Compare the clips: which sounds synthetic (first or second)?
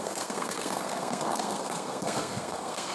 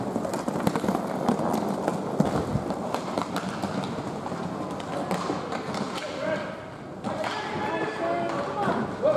first